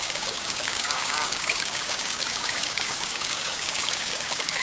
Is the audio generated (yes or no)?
yes